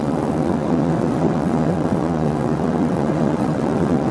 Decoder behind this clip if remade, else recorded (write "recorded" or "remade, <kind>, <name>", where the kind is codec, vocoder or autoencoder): remade, vocoder, WaveNeXt